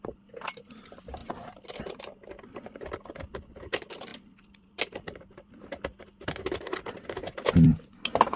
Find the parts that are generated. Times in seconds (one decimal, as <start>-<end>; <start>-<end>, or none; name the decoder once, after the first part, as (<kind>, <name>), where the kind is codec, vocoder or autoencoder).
none